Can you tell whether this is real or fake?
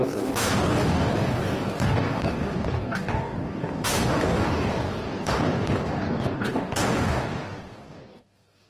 fake